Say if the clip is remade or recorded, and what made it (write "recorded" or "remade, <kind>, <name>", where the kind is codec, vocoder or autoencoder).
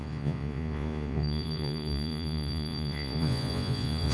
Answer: remade, vocoder, Vocos